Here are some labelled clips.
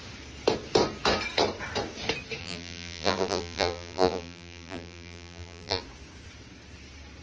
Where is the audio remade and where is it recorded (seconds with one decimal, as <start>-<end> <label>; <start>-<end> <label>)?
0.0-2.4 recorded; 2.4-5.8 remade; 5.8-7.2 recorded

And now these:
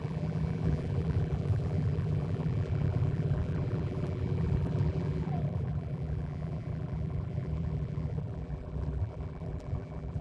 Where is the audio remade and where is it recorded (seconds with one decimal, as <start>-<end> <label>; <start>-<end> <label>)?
0.0-10.2 remade

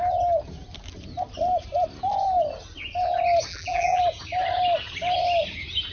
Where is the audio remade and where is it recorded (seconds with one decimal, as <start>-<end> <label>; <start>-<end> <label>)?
0.0-3.5 recorded; 3.5-4.0 remade; 4.0-5.9 recorded